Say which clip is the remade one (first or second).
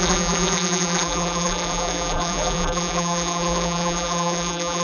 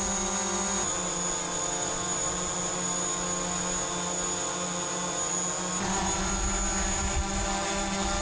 first